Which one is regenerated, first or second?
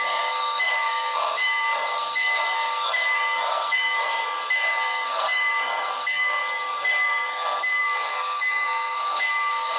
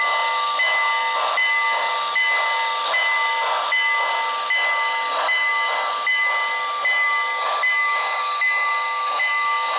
first